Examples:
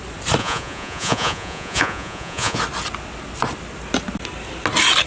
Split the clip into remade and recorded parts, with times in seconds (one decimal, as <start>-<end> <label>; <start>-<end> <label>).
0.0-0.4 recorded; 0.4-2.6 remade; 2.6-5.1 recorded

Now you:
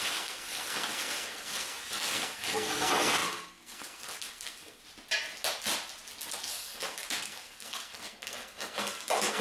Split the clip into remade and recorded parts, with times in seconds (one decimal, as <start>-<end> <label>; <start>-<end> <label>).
0.0-4.8 remade; 4.8-6.3 recorded; 6.3-9.4 remade

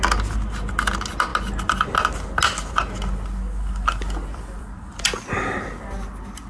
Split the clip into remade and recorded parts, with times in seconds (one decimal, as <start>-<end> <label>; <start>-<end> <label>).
0.0-6.5 recorded

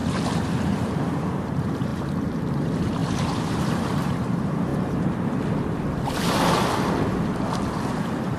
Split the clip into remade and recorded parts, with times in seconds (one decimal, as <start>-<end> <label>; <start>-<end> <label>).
0.0-0.5 recorded; 0.5-1.9 remade; 1.9-2.5 recorded; 2.5-4.7 remade; 4.7-7.9 recorded; 7.9-8.4 remade

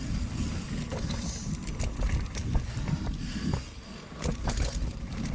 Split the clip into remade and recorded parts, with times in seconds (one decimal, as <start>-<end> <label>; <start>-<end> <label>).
0.0-5.3 recorded